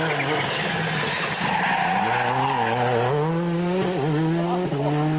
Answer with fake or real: real